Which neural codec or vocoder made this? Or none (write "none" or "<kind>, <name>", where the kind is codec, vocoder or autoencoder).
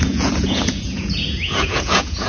vocoder, Vocos